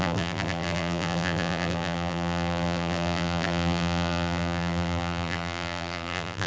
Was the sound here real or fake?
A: fake